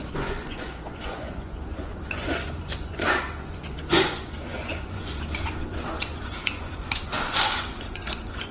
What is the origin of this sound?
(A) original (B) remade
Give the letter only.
B